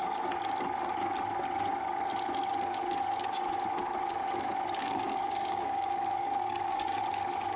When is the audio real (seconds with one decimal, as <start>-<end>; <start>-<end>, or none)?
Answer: 0.0-4.8; 7.0-7.6